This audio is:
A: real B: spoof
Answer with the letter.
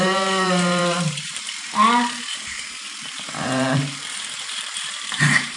B